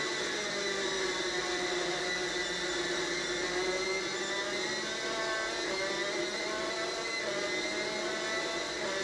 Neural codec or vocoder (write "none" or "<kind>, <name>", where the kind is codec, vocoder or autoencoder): none